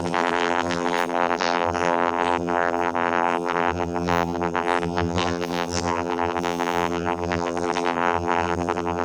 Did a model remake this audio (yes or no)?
yes